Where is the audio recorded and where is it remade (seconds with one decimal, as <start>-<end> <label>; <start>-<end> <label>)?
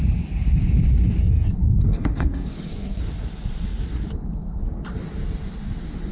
0.0-1.2 recorded; 1.2-3.0 remade; 3.0-6.1 recorded